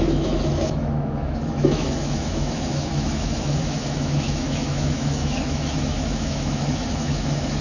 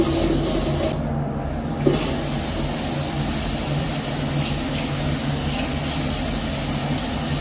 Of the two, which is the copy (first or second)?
first